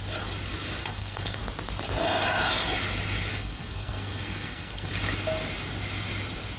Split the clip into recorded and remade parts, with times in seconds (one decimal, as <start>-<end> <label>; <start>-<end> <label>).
0.0-0.8 recorded; 0.8-1.4 remade; 1.4-3.3 recorded; 3.3-4.9 remade; 4.9-6.6 recorded